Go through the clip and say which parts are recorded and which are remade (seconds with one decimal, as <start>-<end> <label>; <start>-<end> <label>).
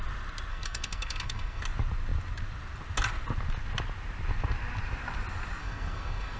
0.0-0.5 recorded; 0.5-1.6 remade; 1.6-5.6 recorded; 5.6-6.4 remade